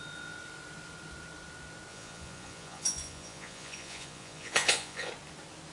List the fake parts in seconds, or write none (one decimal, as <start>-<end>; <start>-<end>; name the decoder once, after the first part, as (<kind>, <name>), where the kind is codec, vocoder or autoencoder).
1.9-5.1 (vocoder, Vocos)